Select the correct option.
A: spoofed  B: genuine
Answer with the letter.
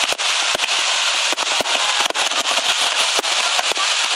B